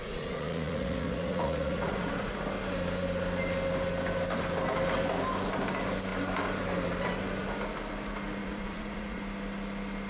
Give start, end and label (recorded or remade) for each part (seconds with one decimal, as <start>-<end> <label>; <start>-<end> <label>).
0.0-2.3 remade; 2.3-8.4 recorded; 8.4-9.2 remade; 9.2-10.1 recorded